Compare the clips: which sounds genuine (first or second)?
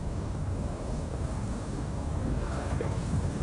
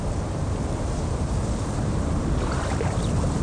second